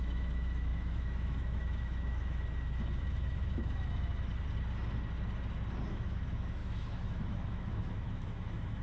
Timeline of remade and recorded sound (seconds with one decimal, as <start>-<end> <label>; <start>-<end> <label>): 0.0-4.3 remade; 4.3-5.9 recorded; 5.9-8.8 remade